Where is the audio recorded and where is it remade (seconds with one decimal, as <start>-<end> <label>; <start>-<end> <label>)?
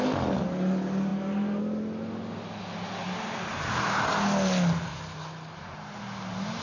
0.0-6.6 recorded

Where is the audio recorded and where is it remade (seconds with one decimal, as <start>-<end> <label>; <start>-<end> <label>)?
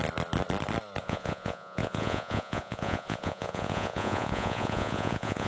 0.0-1.0 recorded; 1.0-5.5 remade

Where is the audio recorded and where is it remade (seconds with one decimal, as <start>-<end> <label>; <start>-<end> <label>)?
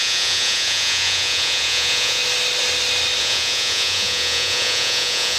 0.0-2.2 remade; 2.2-3.2 recorded; 3.2-5.4 remade